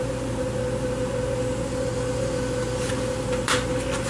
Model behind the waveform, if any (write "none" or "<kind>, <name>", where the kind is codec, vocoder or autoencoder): none